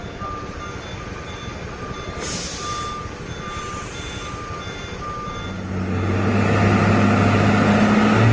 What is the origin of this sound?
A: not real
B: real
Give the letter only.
B